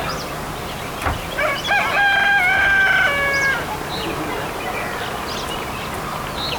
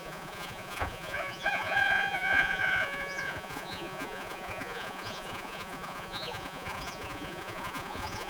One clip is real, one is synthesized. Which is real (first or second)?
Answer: first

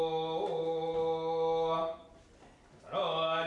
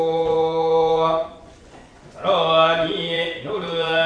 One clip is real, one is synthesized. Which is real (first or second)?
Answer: first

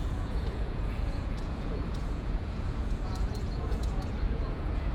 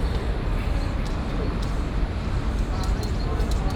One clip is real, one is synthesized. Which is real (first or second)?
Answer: second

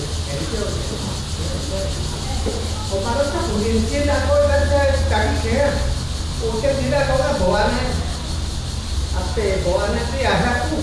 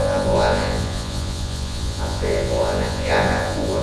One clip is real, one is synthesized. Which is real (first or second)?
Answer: first